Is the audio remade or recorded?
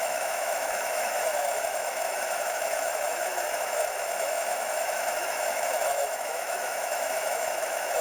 remade